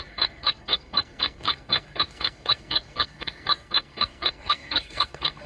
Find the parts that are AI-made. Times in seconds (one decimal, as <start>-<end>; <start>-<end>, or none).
0.0-5.5